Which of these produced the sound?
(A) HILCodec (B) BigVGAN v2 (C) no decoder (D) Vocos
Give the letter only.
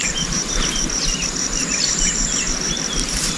B